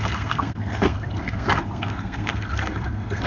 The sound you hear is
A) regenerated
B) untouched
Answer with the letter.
A